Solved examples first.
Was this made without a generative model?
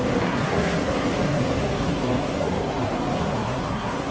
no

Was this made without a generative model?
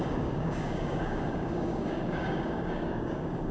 no